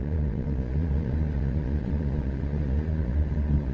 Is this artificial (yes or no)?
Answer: yes